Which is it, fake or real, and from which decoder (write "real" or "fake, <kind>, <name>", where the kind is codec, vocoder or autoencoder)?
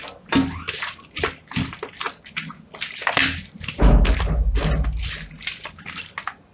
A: real